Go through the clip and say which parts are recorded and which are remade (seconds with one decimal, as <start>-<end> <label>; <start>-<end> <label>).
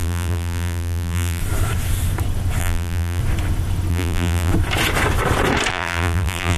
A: 0.0-1.4 remade; 1.4-2.6 recorded; 2.6-3.2 remade; 3.2-3.9 recorded; 3.9-4.5 remade; 4.5-5.7 recorded; 5.7-6.6 remade